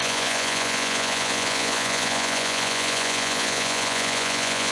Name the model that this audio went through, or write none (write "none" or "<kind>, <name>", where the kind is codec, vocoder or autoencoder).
vocoder, Vocos